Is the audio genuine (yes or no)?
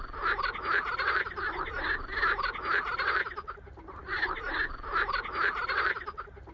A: yes